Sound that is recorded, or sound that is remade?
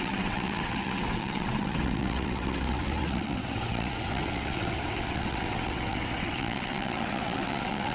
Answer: remade